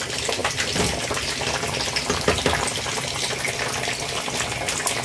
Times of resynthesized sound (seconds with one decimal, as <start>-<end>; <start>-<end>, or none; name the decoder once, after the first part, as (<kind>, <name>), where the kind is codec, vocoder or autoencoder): none